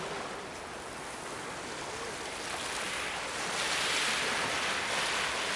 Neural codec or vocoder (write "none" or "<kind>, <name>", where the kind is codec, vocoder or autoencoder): none